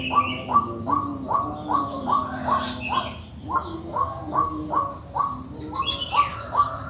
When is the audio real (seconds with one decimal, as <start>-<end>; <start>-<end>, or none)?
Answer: 0.0-3.7; 4.7-6.9